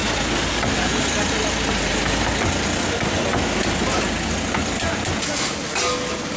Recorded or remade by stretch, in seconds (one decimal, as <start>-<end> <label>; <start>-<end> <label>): 0.0-6.4 recorded